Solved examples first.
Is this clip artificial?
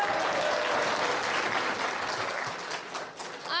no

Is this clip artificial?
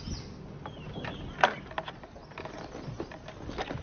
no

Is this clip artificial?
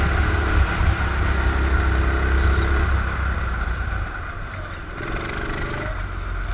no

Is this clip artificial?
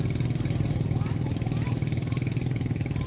no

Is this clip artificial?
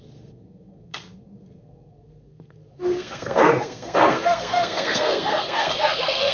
yes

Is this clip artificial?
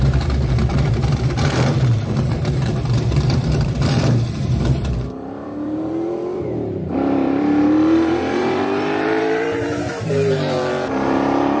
yes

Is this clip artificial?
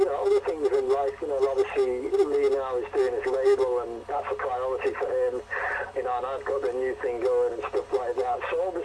no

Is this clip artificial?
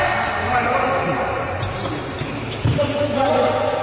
no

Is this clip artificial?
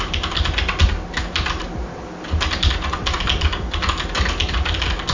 no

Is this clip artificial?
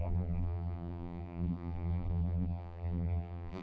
yes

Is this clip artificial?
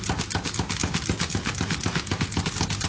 no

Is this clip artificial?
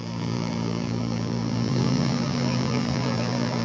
yes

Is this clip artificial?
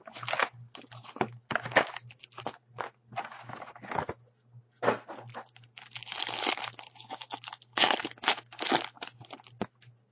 no